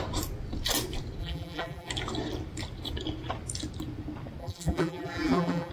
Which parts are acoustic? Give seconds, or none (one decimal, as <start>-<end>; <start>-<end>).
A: 0.0-1.2; 1.9-4.4